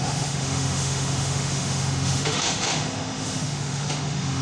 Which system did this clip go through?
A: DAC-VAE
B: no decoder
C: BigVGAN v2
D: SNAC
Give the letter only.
A